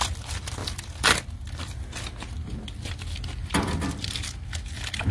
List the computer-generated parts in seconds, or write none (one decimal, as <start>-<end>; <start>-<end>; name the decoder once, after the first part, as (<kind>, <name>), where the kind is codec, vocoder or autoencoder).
0.6-3.7 (vocoder, BigVGAN v2)